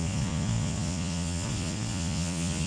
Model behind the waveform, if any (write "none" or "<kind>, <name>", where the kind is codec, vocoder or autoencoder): vocoder, Vocos